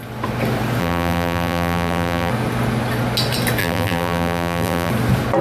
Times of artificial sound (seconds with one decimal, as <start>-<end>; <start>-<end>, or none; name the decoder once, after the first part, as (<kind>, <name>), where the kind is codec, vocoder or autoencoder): 0.8-2.3 (vocoder, BigVGAN v2); 3.6-4.9